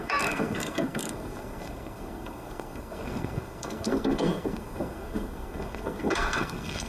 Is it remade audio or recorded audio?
remade